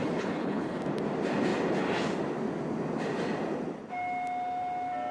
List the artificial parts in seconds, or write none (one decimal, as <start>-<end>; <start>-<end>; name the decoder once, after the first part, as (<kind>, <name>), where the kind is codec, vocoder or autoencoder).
0.0-0.8 (codec, HILCodec)